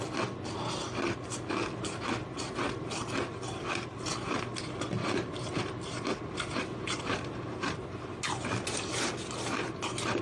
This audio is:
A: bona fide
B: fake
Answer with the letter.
A